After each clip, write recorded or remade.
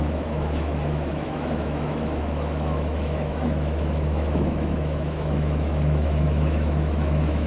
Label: remade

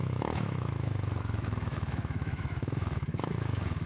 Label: remade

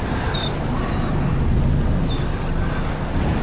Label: recorded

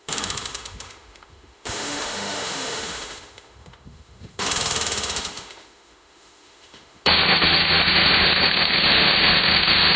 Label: remade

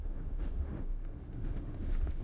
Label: remade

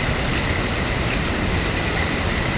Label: recorded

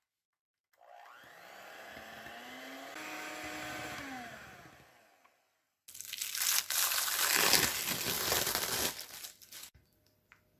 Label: recorded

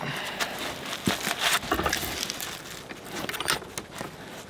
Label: recorded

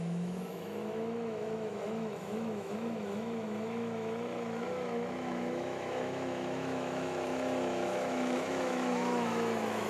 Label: remade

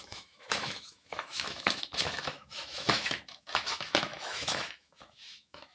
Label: remade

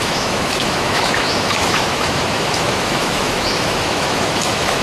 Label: remade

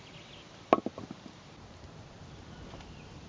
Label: recorded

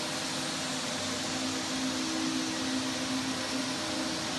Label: recorded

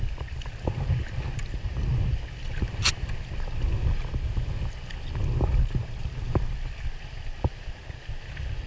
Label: recorded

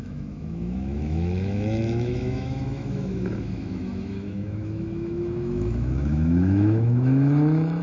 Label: remade